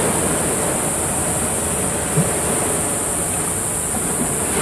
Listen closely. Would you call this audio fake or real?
real